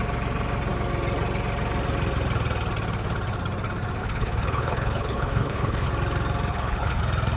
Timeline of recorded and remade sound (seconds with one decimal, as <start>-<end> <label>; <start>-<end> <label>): 0.0-4.0 recorded; 4.0-5.9 remade; 5.9-6.5 recorded; 6.5-7.0 remade; 7.0-7.4 recorded